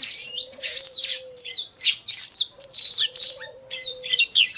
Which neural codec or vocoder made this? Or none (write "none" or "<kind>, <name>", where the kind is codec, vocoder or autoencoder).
vocoder, BigVGAN v2